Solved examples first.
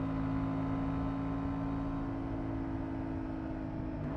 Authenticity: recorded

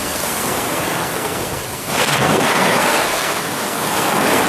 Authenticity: remade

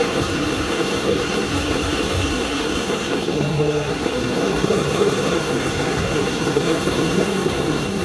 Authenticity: remade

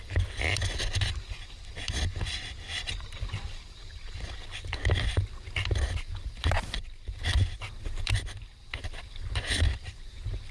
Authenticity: recorded